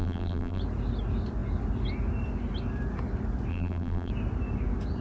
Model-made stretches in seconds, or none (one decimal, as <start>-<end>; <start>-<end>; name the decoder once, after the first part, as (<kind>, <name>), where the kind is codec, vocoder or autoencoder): 0.0-0.6 (vocoder, BigVGAN v2); 3.5-4.1